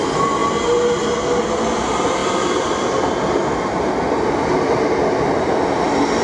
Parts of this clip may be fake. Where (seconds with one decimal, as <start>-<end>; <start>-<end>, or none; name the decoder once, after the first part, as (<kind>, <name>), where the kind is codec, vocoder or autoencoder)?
none